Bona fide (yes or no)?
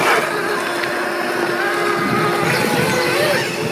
yes